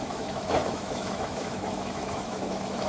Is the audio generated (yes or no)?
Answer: yes